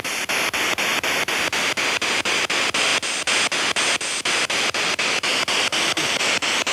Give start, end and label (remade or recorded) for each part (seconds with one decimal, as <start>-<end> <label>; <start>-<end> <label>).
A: 0.0-6.7 recorded